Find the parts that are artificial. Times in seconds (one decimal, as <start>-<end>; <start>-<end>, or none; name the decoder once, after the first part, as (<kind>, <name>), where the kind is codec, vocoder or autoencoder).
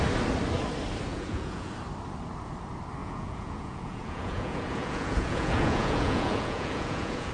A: 1.1-1.7 (vocoder, Vocos); 3.0-7.3